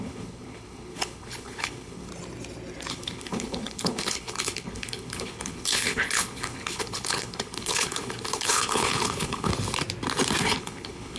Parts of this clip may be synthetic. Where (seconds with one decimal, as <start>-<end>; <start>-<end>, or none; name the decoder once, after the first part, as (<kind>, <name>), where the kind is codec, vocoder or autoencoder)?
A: 0.0-2.1 (codec, HILCodec); 2.9-9.5; 10.4-11.2